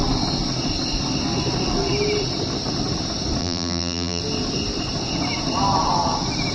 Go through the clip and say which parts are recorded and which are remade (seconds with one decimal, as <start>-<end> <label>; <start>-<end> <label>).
0.0-3.4 recorded; 3.4-4.2 remade; 4.2-6.5 recorded